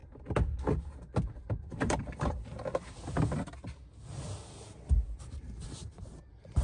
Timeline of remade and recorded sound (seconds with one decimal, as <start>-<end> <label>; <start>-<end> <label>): 0.0-1.3 recorded; 1.3-2.5 remade; 2.5-5.4 recorded; 5.4-6.6 remade